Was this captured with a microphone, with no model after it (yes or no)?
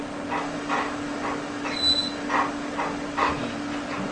yes